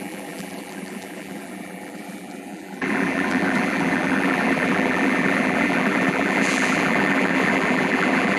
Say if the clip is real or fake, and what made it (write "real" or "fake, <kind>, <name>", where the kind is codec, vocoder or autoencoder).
fake, vocoder, BigVGAN v2